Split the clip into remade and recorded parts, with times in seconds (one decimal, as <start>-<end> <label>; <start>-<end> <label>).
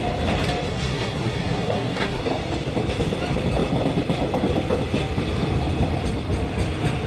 0.0-0.7 recorded; 0.7-2.2 remade; 2.2-7.1 recorded